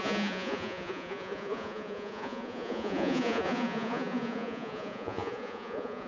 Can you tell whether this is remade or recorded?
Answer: remade